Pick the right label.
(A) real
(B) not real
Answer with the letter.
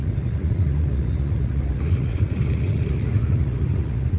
B